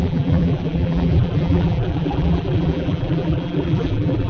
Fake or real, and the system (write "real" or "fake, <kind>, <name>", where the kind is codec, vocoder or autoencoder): fake, vocoder, BigVGAN v2